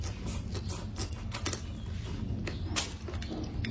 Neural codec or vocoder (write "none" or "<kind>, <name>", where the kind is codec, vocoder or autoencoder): none